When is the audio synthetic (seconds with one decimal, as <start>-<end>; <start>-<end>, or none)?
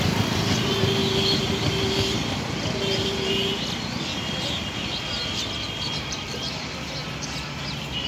0.0-1.0; 5.9-7.0